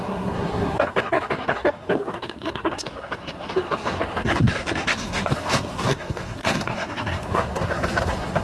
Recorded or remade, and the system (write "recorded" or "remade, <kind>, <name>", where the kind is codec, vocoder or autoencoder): remade, codec, SNAC